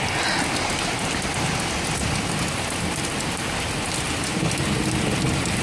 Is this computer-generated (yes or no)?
no